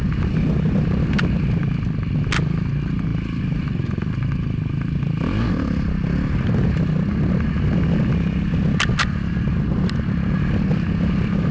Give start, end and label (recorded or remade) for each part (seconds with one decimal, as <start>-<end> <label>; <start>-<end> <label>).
0.0-11.5 recorded